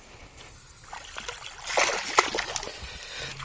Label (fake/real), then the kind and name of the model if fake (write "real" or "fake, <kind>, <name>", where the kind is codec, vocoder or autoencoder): real